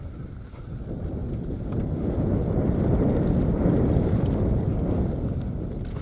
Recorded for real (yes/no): no